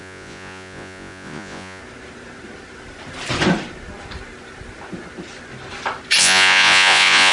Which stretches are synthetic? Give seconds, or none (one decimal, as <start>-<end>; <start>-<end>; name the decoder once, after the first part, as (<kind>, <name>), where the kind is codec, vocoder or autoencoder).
0.0-1.8 (vocoder, Vocos); 6.2-7.3